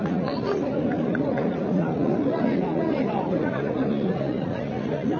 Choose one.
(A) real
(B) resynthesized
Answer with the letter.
B